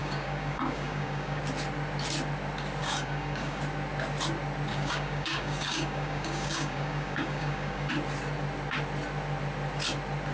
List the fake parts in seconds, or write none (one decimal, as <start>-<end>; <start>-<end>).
0.0-1.4; 2.8-3.6; 4.7-7.9